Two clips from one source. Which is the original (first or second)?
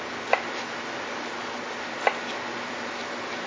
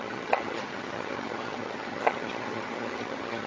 first